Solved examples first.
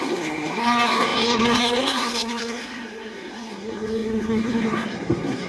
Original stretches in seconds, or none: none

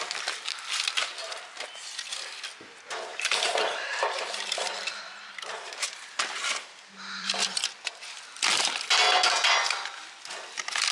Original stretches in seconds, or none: 0.0-3.1; 7.7-10.9

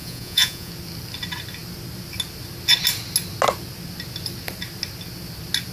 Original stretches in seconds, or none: 0.7-5.7

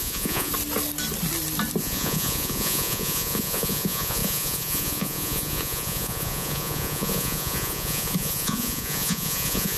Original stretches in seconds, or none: 0.5-1.8

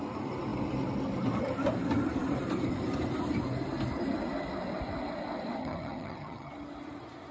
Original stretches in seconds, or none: 0.0-5.6; 6.5-7.3

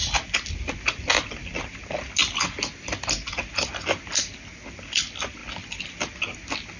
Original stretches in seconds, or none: 0.0-6.8

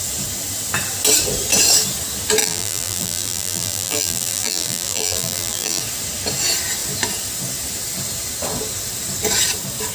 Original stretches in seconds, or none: 0.0-2.4; 5.8-9.9

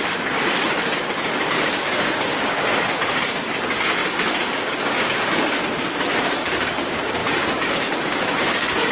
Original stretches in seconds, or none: none